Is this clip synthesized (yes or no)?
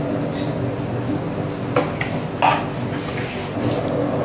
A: no